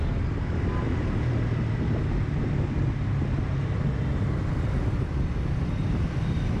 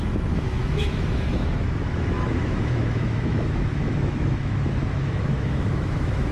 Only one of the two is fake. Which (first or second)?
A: second